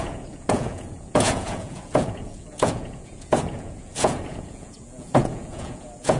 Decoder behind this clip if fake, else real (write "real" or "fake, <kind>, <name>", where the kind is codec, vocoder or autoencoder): fake, vocoder, Vocos